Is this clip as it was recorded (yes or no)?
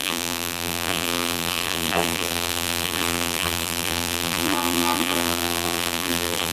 no